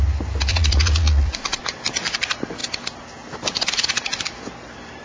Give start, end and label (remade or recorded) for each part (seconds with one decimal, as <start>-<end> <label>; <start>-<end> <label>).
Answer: 0.0-0.5 recorded; 0.5-1.6 remade; 1.6-5.0 recorded

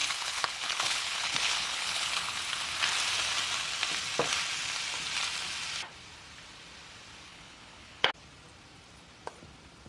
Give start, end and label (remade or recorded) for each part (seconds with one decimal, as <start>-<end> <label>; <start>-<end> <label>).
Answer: 0.0-2.4 remade; 2.4-7.3 recorded; 7.3-8.1 remade; 8.1-9.9 recorded